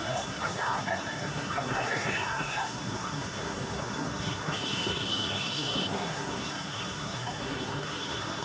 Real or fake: fake